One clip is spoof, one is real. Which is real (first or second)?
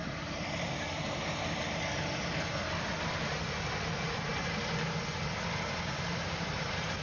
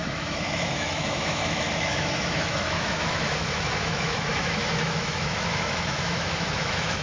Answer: first